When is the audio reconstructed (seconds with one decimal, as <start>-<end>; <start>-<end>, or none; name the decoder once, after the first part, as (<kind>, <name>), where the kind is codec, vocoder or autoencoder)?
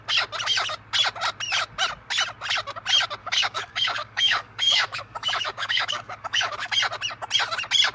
3.2-6.7 (codec, DAC)